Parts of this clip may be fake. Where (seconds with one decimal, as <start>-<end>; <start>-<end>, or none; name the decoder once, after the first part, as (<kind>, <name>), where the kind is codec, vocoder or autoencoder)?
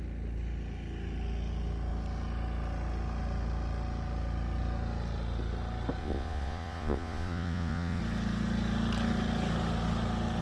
6.0-8.0 (vocoder, Vocos)